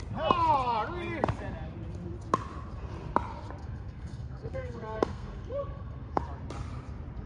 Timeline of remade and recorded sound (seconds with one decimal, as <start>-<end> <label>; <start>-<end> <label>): 0.0-3.6 recorded; 3.6-6.2 remade; 6.2-7.3 recorded